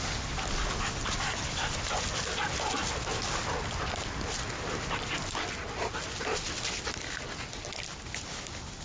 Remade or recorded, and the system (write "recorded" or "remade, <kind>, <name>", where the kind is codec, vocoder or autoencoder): recorded